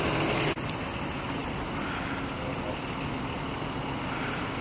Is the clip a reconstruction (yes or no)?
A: no